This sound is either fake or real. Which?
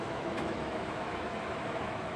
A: fake